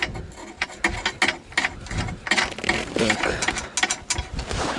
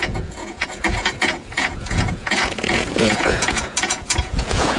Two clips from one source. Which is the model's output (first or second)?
second